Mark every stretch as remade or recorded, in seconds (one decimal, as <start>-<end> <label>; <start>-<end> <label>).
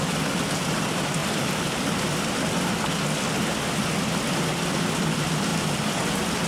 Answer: 0.0-1.2 recorded; 1.2-2.7 remade; 2.7-5.5 recorded; 5.5-6.5 remade